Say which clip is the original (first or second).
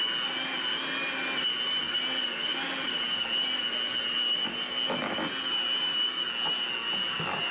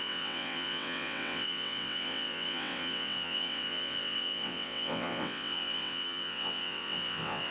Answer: first